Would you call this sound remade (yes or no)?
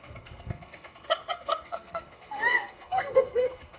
yes